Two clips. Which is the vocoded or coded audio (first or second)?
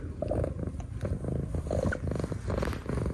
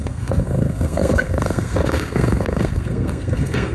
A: second